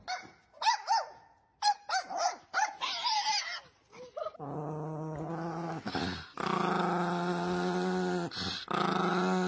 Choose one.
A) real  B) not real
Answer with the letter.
A